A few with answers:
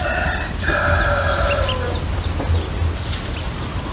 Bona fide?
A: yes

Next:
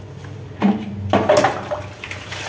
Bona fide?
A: yes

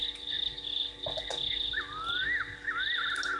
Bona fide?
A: yes